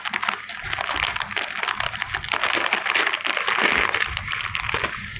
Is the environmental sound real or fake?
real